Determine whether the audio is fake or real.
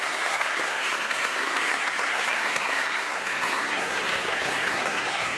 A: fake